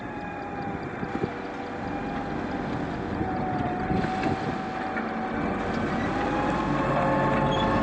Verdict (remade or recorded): recorded